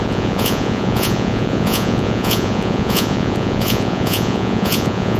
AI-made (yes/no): yes